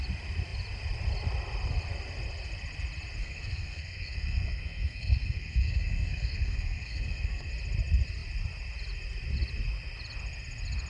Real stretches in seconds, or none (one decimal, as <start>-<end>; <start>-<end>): 0.0-3.2; 7.5-10.9